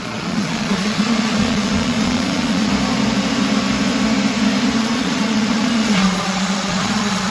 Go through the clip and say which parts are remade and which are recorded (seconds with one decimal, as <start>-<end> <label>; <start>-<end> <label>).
0.0-2.7 remade; 2.7-4.8 recorded; 4.8-7.3 remade